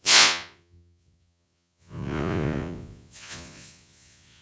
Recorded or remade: remade